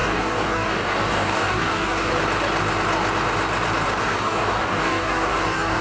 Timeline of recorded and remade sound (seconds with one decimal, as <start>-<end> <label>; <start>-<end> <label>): 0.0-2.1 remade; 2.1-4.0 recorded; 4.0-5.8 remade